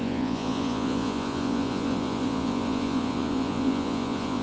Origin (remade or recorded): remade